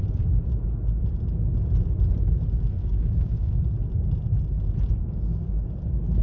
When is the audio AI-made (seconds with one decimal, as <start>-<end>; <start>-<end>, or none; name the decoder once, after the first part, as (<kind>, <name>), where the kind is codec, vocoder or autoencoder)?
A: 2.8-3.6 (codec, DAC)